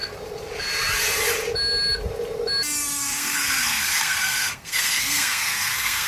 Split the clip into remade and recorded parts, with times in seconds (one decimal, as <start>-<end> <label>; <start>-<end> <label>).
0.0-2.9 recorded; 2.9-6.1 remade